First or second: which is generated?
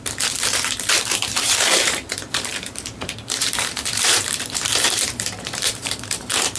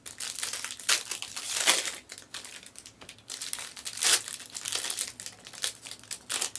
first